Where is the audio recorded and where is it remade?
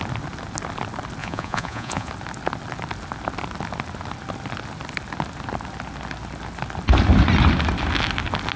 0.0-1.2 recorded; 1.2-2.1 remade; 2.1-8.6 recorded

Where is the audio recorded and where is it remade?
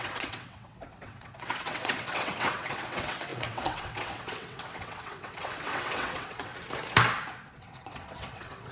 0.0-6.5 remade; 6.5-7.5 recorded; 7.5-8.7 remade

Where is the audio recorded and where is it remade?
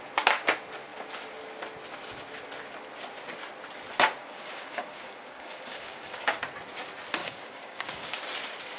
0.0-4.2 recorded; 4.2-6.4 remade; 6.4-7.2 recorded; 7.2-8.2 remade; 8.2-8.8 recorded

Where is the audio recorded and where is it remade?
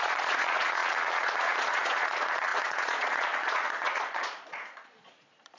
0.0-5.6 remade